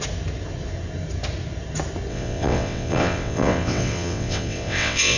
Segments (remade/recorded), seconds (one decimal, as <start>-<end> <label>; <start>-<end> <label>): 0.0-2.1 recorded; 2.1-5.2 remade